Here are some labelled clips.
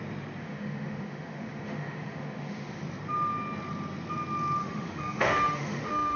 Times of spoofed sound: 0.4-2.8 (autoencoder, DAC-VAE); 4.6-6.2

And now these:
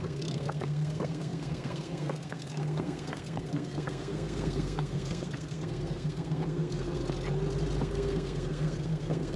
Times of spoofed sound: 0.0-7.0 (codec, SNAC); 7.8-9.4

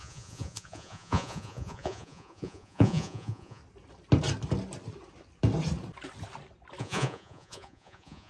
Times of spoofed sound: 0.0-3.6 (vocoder, Vocos); 6.8-8.3

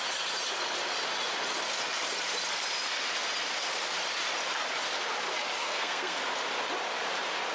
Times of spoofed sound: 5.6-6.2 (codec, SNAC)

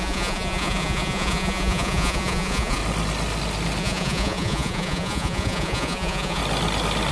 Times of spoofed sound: 0.0-2.8 (vocoder, Vocos); 3.8-6.4

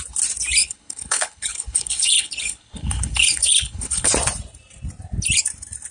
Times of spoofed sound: 0.6-4.1 (codec, HILCodec)